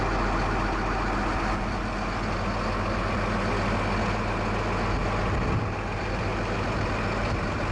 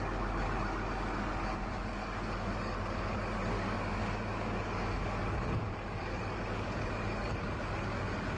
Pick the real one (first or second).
first